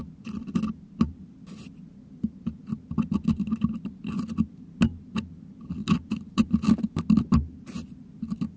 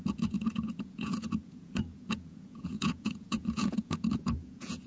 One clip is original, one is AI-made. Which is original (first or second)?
first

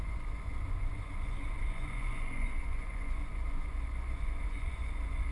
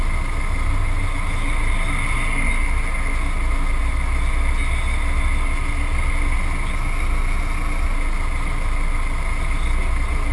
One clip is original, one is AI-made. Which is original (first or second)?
second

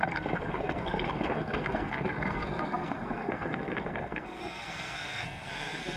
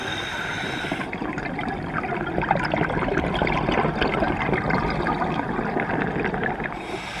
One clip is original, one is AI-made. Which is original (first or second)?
second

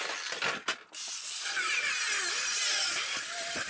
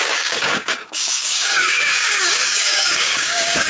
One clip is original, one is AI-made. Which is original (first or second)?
first